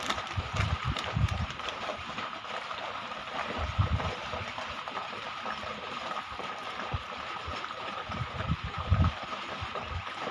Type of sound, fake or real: fake